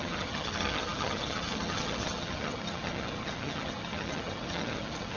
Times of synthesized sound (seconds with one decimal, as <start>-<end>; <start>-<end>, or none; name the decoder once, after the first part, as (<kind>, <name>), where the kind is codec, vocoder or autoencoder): 0.0-5.2 (vocoder, HiFi-GAN)